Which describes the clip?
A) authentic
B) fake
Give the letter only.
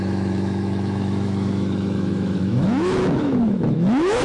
B